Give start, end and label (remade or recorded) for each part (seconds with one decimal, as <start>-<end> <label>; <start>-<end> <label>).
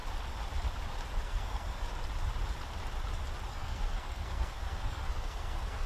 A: 0.0-1.2 recorded; 1.2-1.9 remade; 1.9-3.5 recorded; 3.5-5.9 remade